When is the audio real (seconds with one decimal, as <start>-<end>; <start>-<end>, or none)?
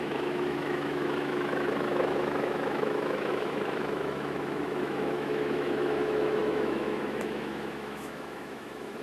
none